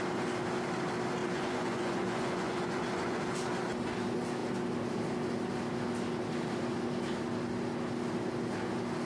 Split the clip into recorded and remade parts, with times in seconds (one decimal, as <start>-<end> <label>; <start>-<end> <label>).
0.0-1.2 recorded; 1.2-3.2 remade; 3.2-9.1 recorded